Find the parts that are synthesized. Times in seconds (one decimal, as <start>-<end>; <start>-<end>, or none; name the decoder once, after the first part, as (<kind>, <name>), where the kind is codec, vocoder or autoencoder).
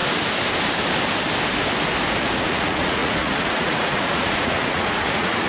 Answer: 2.2-5.5 (vocoder, Vocos)